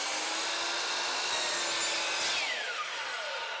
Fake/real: real